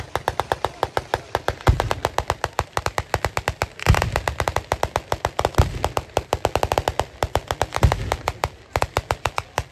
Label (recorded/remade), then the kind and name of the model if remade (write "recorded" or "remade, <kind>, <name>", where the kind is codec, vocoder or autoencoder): recorded